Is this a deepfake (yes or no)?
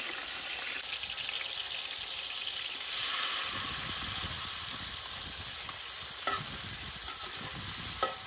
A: no